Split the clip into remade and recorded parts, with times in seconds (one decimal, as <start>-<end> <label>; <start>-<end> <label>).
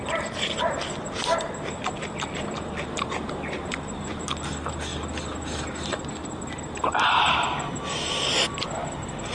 0.0-9.3 recorded